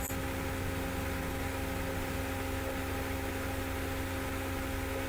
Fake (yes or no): no